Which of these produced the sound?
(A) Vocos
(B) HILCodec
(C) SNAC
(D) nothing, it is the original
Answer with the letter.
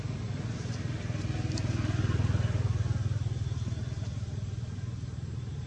D